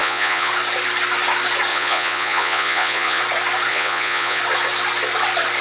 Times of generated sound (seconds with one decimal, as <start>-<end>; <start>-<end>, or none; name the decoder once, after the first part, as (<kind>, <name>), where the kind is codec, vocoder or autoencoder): 0.0-0.5 (vocoder, Vocos); 1.7-3.2; 3.7-4.4